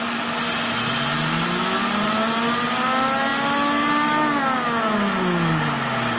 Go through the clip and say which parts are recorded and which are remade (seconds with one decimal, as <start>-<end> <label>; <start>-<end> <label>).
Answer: 0.0-6.2 recorded